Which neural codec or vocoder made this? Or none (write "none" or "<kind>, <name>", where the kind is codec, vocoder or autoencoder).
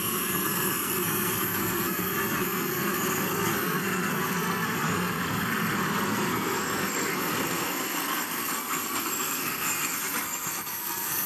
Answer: codec, SNAC